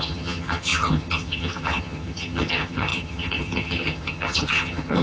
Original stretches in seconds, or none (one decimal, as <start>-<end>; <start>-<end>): none